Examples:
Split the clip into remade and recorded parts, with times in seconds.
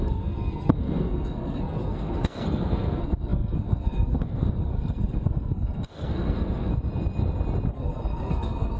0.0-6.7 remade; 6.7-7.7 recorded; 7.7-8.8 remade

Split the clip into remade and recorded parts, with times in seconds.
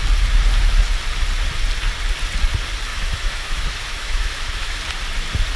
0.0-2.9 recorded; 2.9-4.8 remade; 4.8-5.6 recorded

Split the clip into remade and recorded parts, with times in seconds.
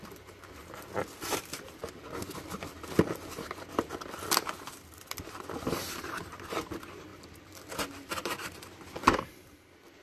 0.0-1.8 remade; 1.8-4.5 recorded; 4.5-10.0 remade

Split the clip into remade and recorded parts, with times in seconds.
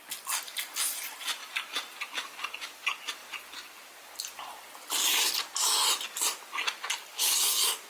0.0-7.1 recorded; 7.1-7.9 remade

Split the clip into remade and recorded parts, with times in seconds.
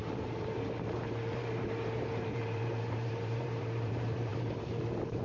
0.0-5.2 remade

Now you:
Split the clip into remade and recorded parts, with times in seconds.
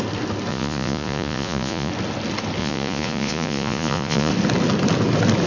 0.0-0.5 recorded; 0.5-1.9 remade; 1.9-2.6 recorded; 2.6-4.3 remade; 4.3-5.5 recorded